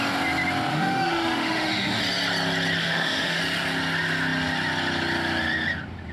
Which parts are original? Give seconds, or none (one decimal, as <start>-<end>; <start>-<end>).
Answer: 0.0-0.7; 2.0-2.8; 3.4-6.1